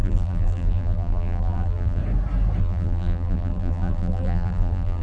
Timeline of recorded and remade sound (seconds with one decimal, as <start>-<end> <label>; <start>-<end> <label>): 0.0-2.0 remade; 2.0-2.6 recorded; 2.6-5.0 remade

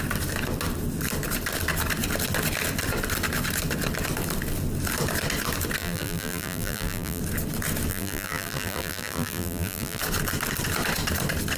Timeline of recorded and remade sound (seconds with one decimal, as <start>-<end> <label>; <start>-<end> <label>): 0.0-5.8 recorded; 5.8-7.2 remade; 7.2-7.9 recorded; 7.9-10.0 remade; 10.0-11.6 recorded

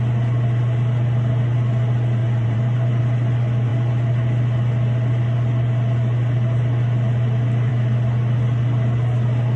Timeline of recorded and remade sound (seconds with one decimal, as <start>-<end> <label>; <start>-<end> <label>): 0.0-2.2 recorded; 2.2-3.0 remade; 3.0-9.6 recorded

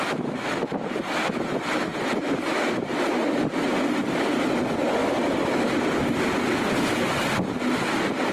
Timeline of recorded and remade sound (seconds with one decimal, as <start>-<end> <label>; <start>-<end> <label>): 0.0-1.9 recorded; 1.9-3.1 remade; 3.1-5.0 recorded; 5.0-5.6 remade; 5.6-8.3 recorded

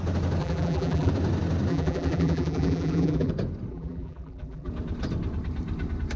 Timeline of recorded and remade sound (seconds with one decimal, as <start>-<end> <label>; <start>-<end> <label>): 0.0-0.4 recorded; 0.4-1.1 remade; 1.1-1.7 recorded; 1.7-3.3 remade; 3.3-3.7 recorded; 3.7-4.7 remade; 4.7-6.2 recorded

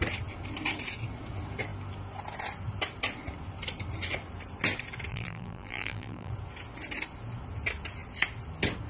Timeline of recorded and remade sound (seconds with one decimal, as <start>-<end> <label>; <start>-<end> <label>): 0.0-5.1 recorded; 5.1-6.3 remade; 6.3-8.9 recorded